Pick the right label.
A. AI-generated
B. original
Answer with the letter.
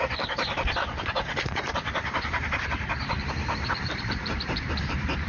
A